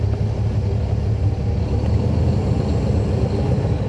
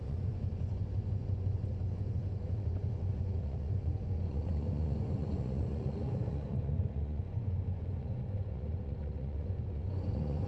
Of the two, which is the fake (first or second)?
second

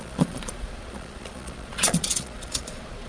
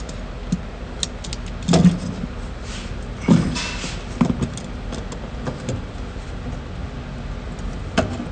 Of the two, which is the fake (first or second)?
first